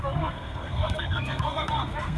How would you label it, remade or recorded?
remade